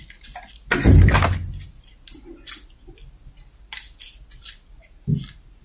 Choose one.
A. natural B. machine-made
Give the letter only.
A